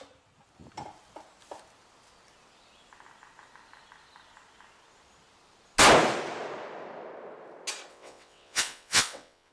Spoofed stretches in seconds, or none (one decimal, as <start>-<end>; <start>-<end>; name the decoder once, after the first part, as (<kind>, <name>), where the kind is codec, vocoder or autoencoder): 7.9-9.5 (vocoder, WaveNeXt)